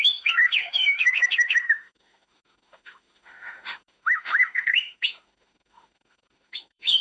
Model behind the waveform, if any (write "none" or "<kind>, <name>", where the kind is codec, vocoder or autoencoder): autoencoder, DAC-VAE